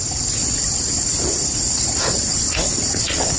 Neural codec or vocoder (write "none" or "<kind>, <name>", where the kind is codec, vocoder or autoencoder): none